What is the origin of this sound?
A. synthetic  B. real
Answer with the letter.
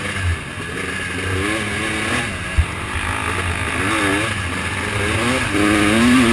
B